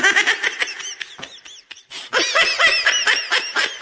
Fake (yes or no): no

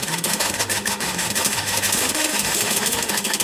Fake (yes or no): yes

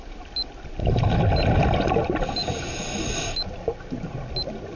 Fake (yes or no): no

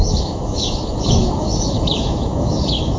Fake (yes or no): yes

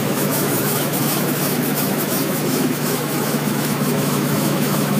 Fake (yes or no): yes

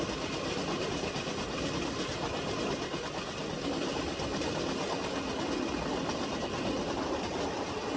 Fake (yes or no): no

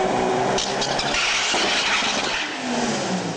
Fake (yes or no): no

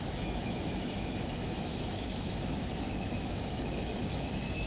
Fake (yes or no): yes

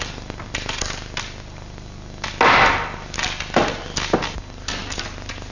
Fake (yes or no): no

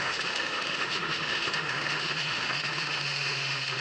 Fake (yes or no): yes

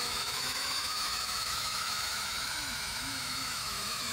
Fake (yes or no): yes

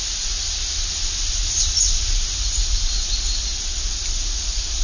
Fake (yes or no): no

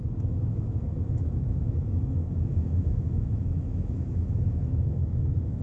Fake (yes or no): yes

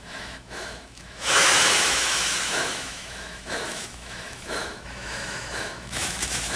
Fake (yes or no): yes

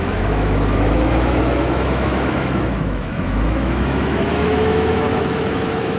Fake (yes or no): yes